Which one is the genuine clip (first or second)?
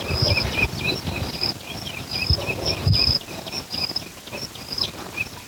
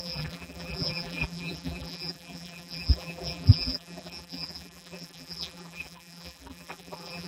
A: first